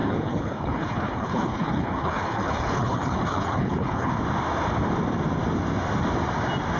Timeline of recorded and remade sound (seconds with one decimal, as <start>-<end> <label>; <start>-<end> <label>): 0.0-4.1 remade; 4.1-6.8 recorded